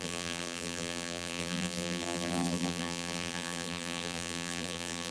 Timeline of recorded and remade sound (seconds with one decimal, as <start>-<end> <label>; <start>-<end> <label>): 0.0-5.1 remade